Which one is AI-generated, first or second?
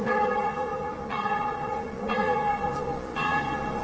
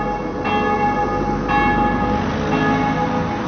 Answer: first